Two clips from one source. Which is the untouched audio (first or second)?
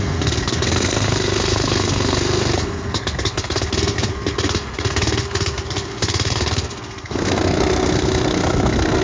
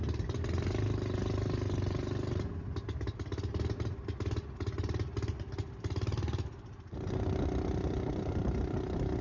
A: second